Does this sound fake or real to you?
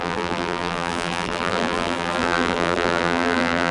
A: fake